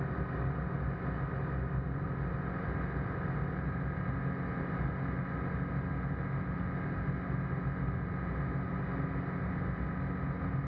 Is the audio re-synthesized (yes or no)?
no